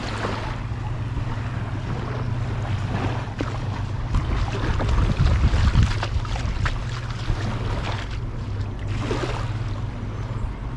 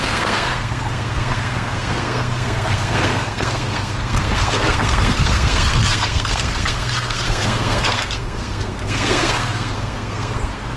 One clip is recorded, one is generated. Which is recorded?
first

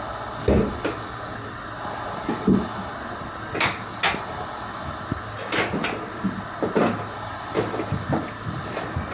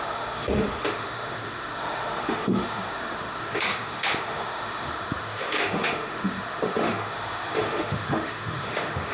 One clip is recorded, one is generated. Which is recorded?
first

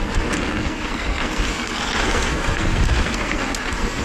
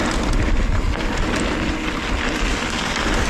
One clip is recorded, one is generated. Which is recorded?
second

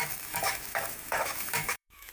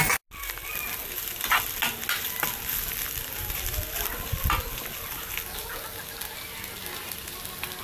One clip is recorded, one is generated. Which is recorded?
second